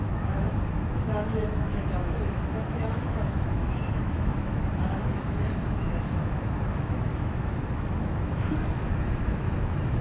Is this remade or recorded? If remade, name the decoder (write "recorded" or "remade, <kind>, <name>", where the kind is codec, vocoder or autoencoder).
remade, autoencoder, DAC-VAE